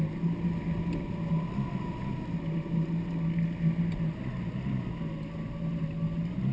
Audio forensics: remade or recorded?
recorded